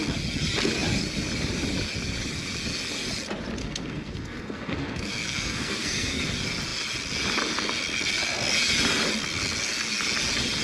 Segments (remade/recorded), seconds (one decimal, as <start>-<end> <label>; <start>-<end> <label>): 0.0-3.6 recorded; 3.6-6.2 remade; 6.2-10.6 recorded

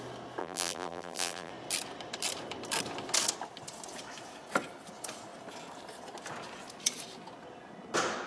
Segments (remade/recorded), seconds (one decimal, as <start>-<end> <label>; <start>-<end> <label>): 0.0-0.4 recorded; 0.4-1.5 remade; 1.5-8.3 recorded

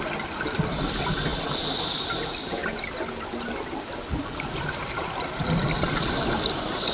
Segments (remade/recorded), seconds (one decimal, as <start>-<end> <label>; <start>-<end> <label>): 0.0-6.9 recorded

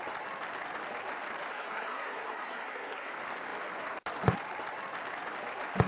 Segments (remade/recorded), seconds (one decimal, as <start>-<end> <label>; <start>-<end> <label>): 0.0-1.5 recorded; 1.5-3.1 remade; 3.1-5.9 recorded

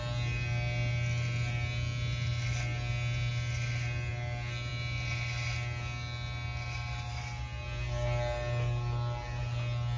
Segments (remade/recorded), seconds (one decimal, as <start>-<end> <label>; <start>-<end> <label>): 0.0-10.0 recorded

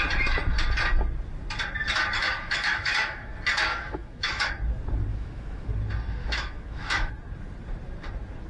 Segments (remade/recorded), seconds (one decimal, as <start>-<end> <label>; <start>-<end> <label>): 0.0-2.2 recorded; 2.2-3.3 remade; 3.3-3.7 recorded; 3.7-4.5 remade; 4.5-5.1 recorded; 5.1-5.7 remade; 5.7-6.2 recorded; 6.2-7.1 remade; 7.1-8.5 recorded

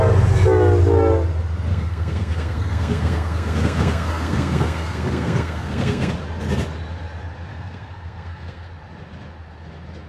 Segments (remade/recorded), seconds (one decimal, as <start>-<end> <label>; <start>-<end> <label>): 0.0-1.7 recorded; 1.7-6.1 remade; 6.1-7.5 recorded; 7.5-8.7 remade; 8.7-10.1 recorded